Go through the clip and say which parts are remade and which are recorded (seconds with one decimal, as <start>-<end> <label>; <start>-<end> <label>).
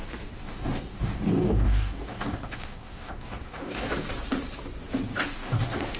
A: 0.0-0.4 recorded; 0.4-3.9 remade; 3.9-5.1 recorded; 5.1-6.0 remade